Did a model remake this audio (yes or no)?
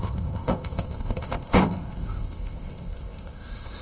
yes